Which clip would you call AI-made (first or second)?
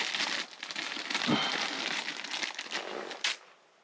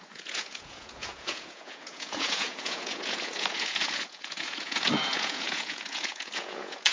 second